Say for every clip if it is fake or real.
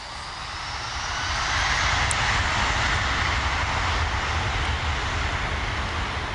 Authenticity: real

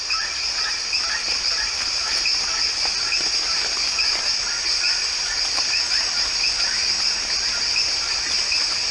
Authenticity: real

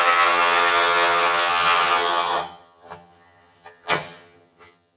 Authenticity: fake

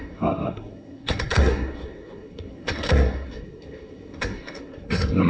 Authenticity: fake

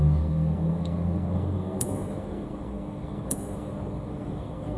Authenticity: fake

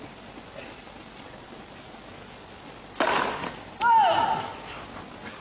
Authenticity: real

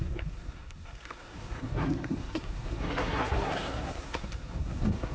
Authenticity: fake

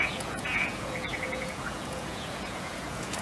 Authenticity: fake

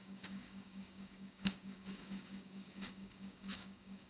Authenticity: fake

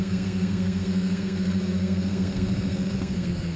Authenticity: fake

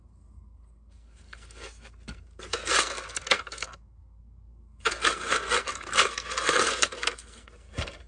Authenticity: fake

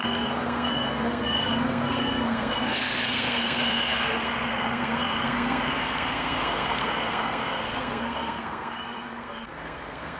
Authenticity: fake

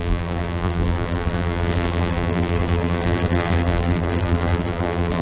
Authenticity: fake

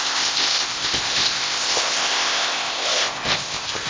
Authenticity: fake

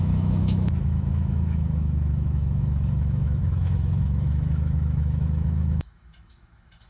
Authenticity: fake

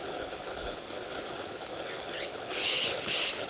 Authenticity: fake